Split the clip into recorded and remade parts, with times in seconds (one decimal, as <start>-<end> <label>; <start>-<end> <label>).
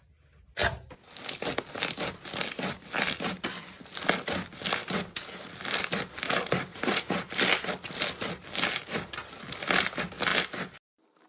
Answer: 0.0-6.7 recorded; 6.7-7.3 remade; 7.3-11.3 recorded